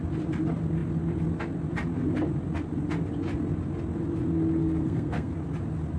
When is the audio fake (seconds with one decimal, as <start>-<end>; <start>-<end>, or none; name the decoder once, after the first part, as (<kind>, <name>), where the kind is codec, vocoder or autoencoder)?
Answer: 4.6-5.3 (codec, SNAC)